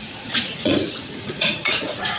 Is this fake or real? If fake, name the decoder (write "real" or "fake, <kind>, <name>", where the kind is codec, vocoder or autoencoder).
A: fake, vocoder, Vocos